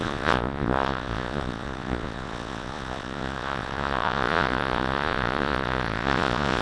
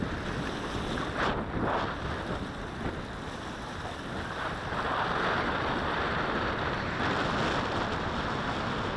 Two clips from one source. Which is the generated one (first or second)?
first